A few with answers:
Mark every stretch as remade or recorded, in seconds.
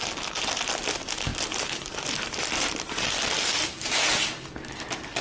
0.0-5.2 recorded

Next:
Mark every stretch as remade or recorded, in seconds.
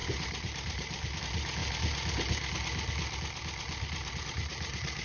0.0-1.6 remade; 1.6-4.2 recorded; 4.2-5.0 remade